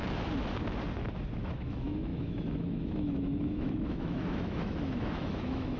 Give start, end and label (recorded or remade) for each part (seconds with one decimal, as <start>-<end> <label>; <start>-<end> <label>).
0.0-1.4 recorded; 1.4-5.8 remade